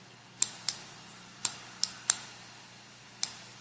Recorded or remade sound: recorded